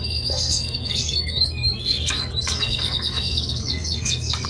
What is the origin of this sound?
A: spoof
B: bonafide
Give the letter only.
A